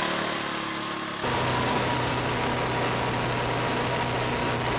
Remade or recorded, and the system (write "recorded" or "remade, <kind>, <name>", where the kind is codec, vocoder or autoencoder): recorded